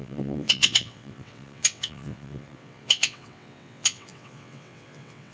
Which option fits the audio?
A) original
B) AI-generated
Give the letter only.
B